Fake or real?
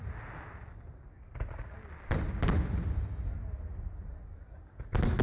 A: real